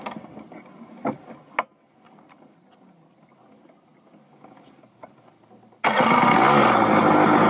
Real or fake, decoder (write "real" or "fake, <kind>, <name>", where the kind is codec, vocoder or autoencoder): real